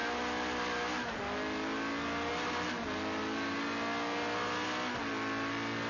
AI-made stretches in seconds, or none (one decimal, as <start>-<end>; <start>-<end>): none